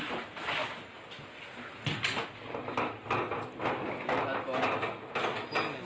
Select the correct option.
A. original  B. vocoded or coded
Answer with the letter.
A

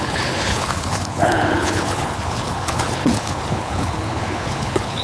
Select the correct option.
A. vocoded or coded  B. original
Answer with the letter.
A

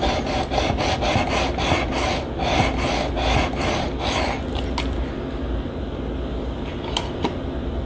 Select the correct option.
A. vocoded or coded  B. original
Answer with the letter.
B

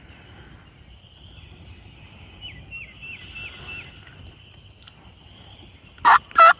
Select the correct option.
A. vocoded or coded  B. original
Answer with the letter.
B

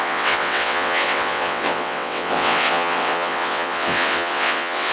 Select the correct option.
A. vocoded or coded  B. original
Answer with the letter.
A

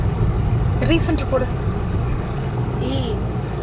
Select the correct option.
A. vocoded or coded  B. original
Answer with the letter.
A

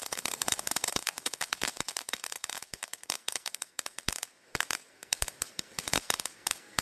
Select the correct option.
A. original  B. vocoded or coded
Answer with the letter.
B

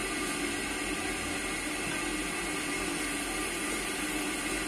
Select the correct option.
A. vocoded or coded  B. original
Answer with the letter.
B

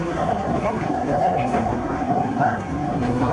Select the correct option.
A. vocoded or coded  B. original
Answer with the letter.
A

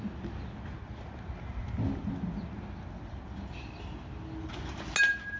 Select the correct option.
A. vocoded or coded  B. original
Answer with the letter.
B